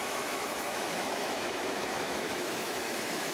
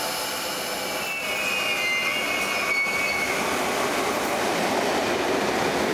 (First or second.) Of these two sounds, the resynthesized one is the first